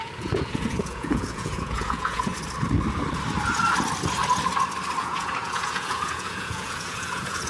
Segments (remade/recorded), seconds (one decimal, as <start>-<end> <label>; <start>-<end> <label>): 0.0-2.3 remade; 2.3-5.0 recorded; 5.0-7.5 remade

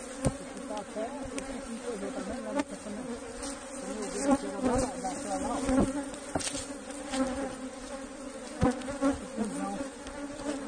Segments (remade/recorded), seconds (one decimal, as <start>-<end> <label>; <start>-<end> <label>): 0.0-10.7 recorded

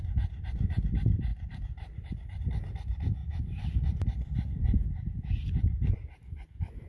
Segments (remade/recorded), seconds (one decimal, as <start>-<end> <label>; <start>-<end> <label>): 0.0-1.3 recorded; 1.3-2.4 remade; 2.4-3.2 recorded; 3.2-6.5 remade; 6.5-6.9 recorded

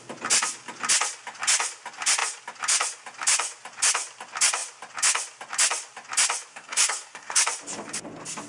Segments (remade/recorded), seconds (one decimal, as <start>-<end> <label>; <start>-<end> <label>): 0.0-6.5 recorded; 6.5-7.4 remade; 7.4-8.5 recorded

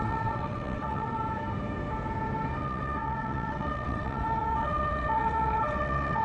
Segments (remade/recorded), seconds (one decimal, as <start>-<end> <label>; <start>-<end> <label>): 0.0-1.2 remade; 1.2-2.6 recorded; 2.6-6.2 remade

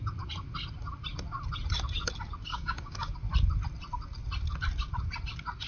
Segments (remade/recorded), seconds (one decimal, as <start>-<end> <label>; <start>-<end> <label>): 0.0-2.5 recorded; 2.5-3.1 remade; 3.1-5.7 recorded

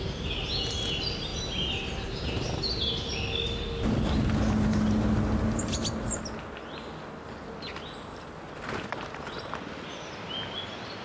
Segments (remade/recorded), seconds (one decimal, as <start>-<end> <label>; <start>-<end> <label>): 0.0-11.0 recorded

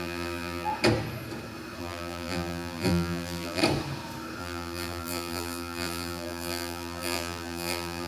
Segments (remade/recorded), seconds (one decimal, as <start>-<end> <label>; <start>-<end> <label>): 0.0-0.7 remade; 0.7-1.8 recorded; 1.8-3.6 remade; 3.6-4.4 recorded; 4.4-8.1 remade